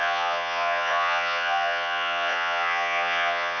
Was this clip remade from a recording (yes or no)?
yes